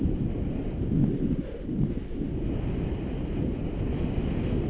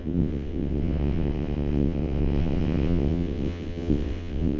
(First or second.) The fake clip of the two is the second